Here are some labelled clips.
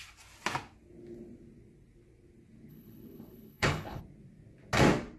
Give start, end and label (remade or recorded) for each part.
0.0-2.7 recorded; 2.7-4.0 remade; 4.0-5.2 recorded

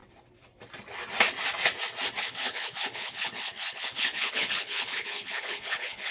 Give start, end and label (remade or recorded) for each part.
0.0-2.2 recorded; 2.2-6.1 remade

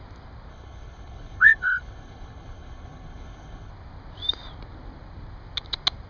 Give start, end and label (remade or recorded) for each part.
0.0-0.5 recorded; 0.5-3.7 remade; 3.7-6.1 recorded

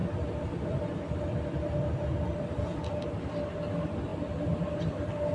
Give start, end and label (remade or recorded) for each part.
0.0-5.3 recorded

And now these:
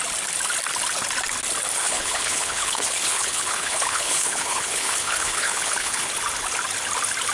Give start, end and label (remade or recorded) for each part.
0.0-1.7 recorded; 1.7-6.1 remade; 6.1-7.3 recorded